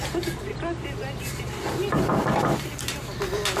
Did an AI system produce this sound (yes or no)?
no